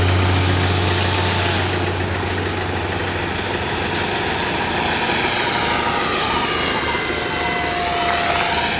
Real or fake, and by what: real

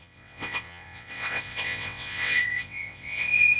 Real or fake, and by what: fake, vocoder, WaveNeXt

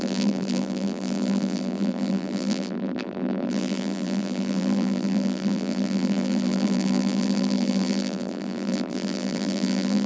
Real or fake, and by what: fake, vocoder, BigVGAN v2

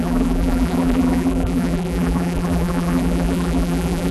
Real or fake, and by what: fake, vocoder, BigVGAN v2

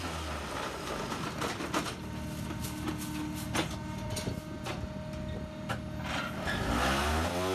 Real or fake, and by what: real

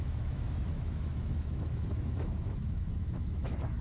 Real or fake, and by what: fake, autoencoder, DAC-VAE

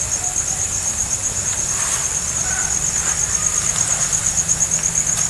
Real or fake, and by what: real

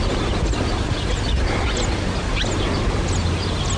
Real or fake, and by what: real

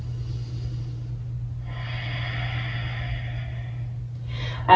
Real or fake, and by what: real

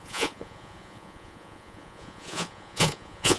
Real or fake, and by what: fake, vocoder, Vocos